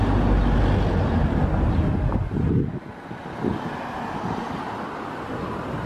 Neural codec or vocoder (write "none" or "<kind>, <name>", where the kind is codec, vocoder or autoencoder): none